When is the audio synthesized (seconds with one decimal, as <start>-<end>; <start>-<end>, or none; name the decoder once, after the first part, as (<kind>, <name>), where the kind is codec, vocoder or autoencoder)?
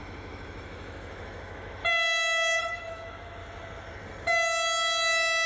0.0-1.8 (autoencoder, DAC-VAE); 2.6-3.4